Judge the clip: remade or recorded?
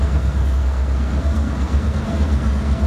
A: remade